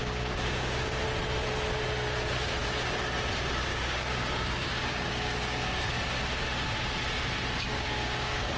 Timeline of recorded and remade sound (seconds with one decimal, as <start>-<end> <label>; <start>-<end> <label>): 0.0-1.0 remade; 1.0-3.7 recorded; 3.7-5.9 remade; 5.9-7.7 recorded; 7.7-8.6 remade